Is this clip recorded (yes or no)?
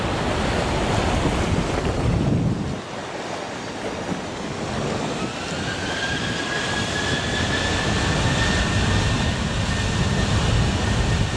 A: yes